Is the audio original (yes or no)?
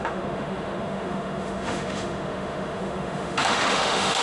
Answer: no